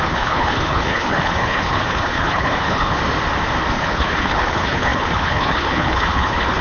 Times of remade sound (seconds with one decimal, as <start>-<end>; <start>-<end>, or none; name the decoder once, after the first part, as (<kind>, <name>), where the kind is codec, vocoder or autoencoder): 0.0-3.0 (codec, HILCodec); 3.7-6.6